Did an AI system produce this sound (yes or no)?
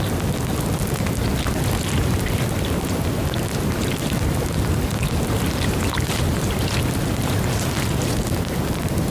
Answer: no